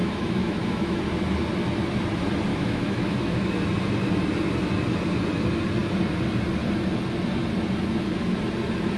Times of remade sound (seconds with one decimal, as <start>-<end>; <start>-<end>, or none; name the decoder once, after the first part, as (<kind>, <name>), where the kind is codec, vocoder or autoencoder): 0.0-1.0 (autoencoder, DAC-VAE); 2.5-3.5